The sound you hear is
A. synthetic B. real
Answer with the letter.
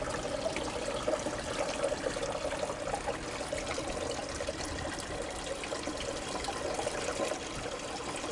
B